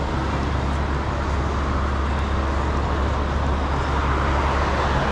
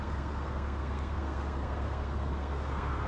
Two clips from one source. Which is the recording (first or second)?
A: first